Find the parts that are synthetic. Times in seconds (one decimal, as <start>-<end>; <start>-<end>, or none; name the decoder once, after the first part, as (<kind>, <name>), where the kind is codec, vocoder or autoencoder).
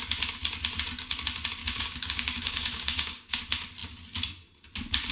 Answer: 1.6-3.4 (codec, DAC)